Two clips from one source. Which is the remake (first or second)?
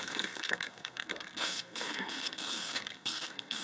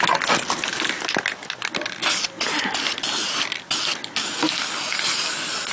first